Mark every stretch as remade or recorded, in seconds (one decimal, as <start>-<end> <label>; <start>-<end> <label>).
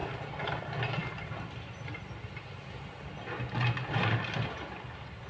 0.0-5.3 recorded